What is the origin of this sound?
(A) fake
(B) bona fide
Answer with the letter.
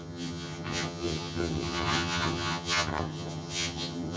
A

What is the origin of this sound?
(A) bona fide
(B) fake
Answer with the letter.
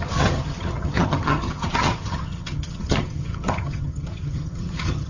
B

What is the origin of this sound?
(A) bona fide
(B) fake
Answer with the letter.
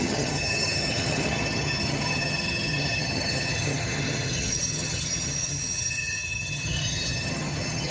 B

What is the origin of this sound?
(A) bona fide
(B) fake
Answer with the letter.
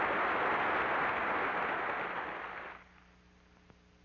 A